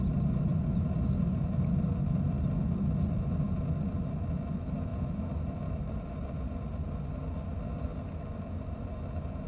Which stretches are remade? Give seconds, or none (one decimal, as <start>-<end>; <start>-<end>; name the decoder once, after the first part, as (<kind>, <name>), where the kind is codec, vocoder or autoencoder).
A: none